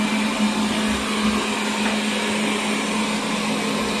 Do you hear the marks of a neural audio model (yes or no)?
no